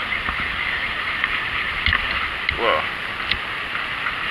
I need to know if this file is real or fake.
real